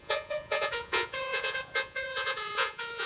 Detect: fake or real fake